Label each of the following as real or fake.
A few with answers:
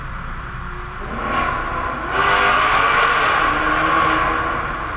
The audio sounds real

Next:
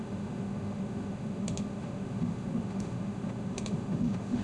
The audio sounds fake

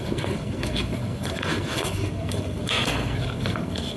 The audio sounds fake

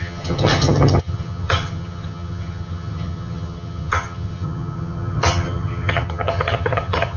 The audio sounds fake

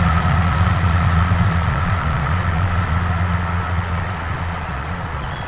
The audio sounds fake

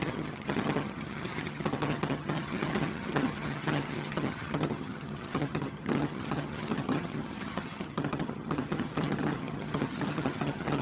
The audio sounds fake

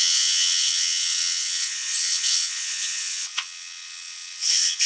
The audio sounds fake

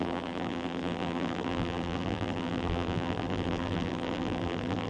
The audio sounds fake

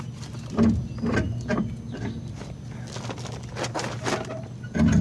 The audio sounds real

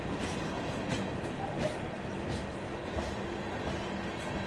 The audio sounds real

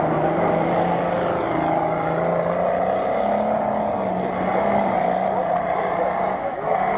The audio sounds real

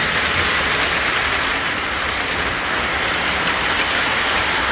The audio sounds real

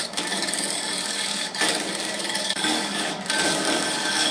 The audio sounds fake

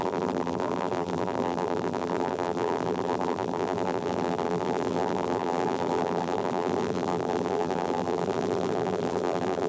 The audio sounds fake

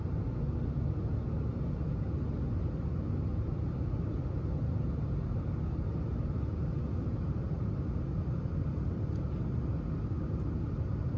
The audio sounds real